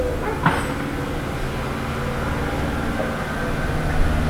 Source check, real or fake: real